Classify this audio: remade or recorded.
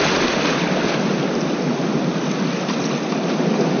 recorded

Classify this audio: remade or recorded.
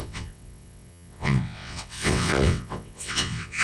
remade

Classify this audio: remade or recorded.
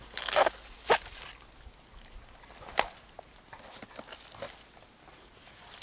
recorded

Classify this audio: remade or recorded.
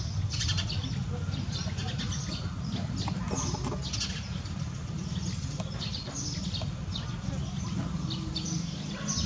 recorded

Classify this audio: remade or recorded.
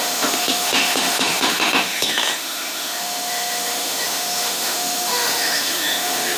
remade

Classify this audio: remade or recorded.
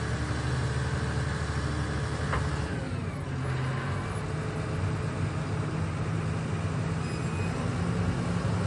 recorded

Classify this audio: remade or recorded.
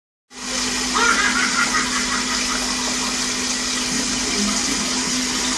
recorded